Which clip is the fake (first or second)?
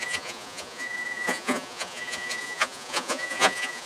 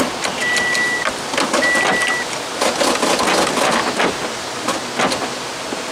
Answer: first